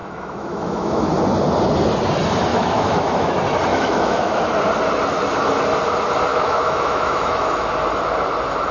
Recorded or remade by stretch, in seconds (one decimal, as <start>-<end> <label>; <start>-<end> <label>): 0.0-1.1 remade; 1.1-2.5 recorded; 2.5-3.3 remade; 3.3-3.7 recorded; 3.7-4.4 remade; 4.4-6.3 recorded; 6.3-7.7 remade; 7.7-8.7 recorded